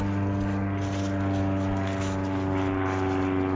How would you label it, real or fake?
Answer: real